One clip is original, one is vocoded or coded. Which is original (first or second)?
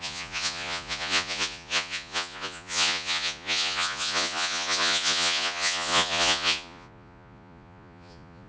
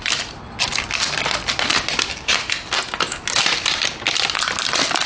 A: second